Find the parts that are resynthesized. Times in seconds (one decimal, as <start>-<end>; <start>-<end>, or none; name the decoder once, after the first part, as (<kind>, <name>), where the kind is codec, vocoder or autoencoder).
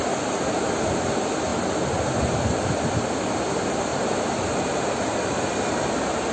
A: none